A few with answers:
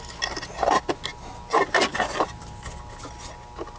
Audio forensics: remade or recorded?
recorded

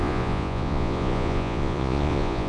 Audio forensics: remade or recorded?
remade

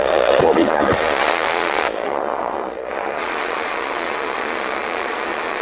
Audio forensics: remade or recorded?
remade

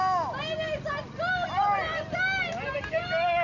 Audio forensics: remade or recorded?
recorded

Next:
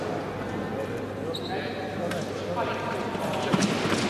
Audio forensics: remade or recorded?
recorded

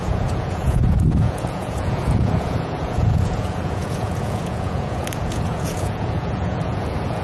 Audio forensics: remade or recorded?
remade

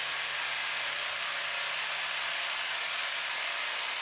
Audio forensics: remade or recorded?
recorded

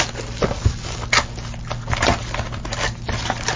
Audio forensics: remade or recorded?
recorded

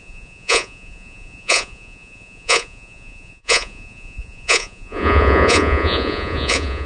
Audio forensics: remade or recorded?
remade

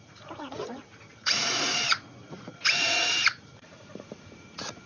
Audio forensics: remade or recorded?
remade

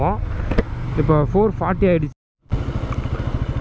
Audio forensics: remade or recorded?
recorded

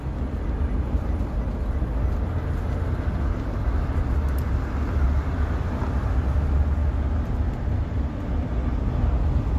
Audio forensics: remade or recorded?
recorded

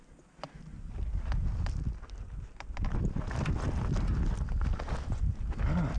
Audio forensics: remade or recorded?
recorded